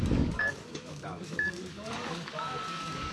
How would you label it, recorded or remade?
remade